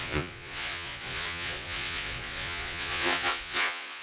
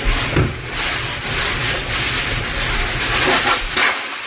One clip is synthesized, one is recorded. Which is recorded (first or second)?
second